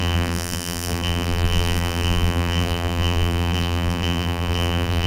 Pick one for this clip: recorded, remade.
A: remade